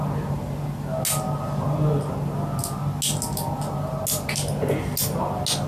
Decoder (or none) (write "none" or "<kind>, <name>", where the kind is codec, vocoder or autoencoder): none